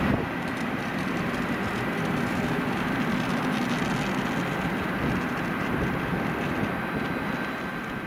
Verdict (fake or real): real